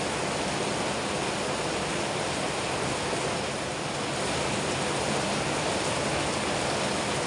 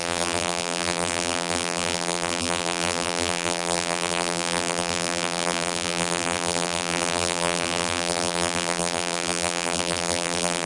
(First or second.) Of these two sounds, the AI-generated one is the second